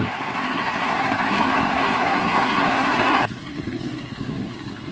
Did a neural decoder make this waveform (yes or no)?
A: yes